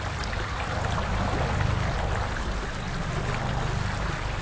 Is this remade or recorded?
recorded